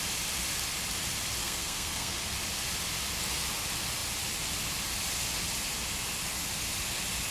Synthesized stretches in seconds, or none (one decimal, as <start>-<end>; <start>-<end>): 1.4-2.1